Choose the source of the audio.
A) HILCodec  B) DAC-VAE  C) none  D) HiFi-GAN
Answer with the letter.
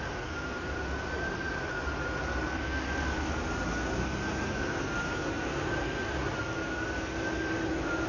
C